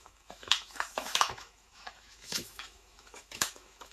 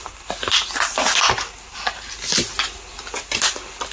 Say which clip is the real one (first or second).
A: second